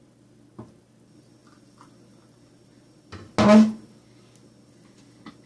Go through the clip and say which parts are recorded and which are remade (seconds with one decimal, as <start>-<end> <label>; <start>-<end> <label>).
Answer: 0.0-5.5 recorded